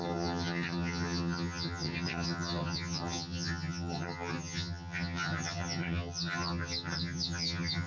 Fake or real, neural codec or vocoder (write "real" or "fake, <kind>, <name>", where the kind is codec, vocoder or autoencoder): fake, vocoder, HiFi-GAN